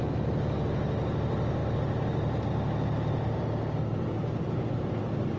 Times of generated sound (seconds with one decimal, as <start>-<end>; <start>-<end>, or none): none

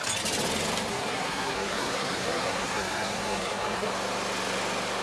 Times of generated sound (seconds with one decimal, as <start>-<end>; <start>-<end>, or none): 0.9-3.9